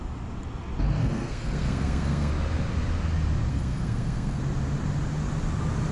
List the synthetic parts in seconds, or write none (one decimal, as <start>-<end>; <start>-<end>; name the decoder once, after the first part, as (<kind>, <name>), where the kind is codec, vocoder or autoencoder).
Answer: 1.0-2.3 (codec, SNAC); 3.5-4.4